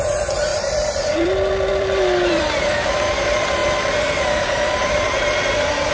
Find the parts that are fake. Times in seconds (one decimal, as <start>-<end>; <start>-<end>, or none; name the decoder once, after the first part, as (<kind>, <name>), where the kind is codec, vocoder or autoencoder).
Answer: 0.0-5.9 (vocoder, BigVGAN v2)